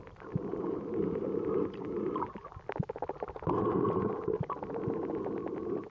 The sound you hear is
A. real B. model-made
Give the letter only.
A